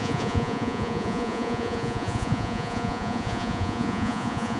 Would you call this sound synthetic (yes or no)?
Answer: yes